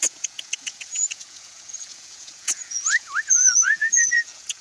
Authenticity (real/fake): fake